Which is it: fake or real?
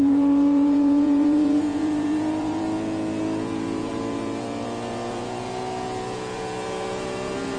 fake